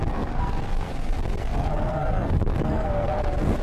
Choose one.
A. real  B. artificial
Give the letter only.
B